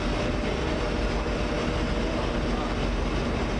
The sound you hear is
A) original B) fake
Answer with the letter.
A